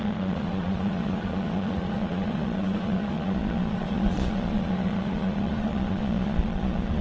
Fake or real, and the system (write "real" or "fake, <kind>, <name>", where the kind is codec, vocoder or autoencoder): fake, vocoder, Vocos